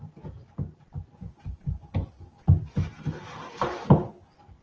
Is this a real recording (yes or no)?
yes